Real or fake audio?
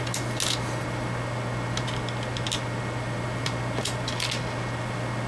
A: real